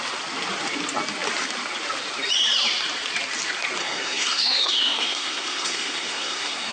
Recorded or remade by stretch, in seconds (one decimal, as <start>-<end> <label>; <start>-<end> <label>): 0.0-3.8 recorded; 3.8-6.7 remade